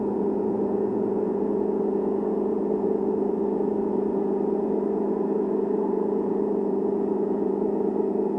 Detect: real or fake fake